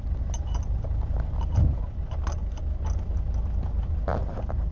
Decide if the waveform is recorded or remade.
recorded